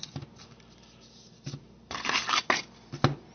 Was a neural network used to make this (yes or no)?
no